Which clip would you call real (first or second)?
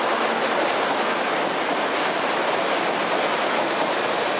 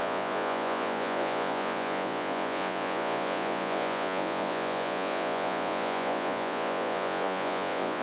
first